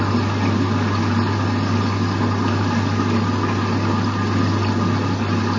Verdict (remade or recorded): recorded